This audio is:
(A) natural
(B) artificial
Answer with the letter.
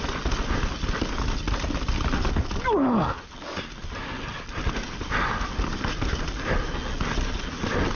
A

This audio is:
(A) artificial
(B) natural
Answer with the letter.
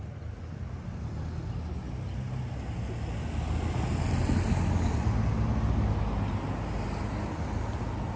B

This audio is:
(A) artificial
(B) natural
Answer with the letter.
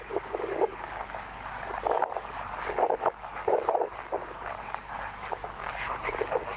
A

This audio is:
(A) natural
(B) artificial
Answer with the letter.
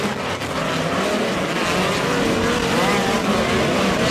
A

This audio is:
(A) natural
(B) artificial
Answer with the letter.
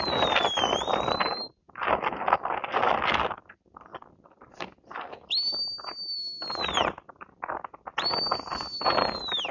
A